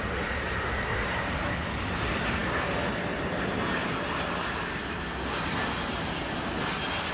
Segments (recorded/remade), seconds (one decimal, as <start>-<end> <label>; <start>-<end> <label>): 0.0-7.1 recorded